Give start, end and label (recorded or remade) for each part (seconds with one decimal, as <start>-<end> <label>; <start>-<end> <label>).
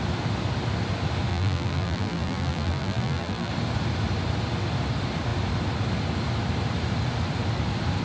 0.0-1.3 recorded; 1.3-3.5 remade; 3.5-8.0 recorded